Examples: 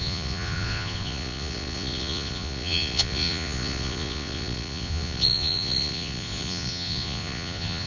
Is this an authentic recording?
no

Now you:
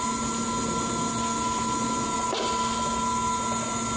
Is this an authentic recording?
yes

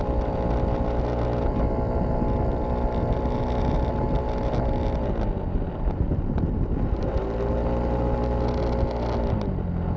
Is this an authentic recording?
yes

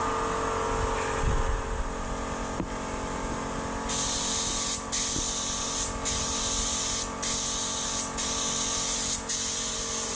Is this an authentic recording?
yes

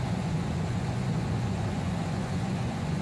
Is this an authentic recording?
no